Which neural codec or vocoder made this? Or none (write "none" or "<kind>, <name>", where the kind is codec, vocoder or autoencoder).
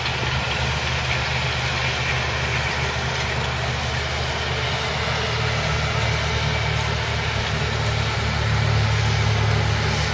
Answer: none